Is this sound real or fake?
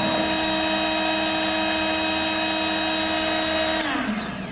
real